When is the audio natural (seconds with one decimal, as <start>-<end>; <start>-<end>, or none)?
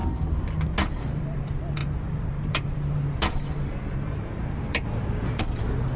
0.0-1.2